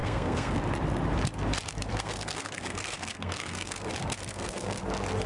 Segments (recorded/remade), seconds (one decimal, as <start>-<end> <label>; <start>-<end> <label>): 0.0-0.6 remade; 0.6-1.9 recorded; 1.9-3.9 remade; 3.9-4.3 recorded; 4.3-4.8 remade; 4.8-5.3 recorded